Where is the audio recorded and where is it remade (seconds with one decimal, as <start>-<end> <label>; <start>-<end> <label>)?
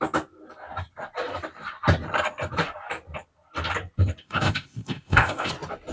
0.0-4.2 recorded; 4.2-5.5 remade; 5.5-5.9 recorded